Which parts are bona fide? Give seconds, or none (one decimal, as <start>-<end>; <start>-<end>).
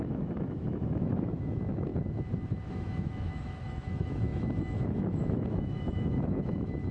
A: 1.9-2.7